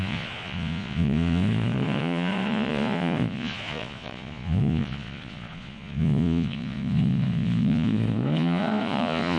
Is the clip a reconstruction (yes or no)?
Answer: yes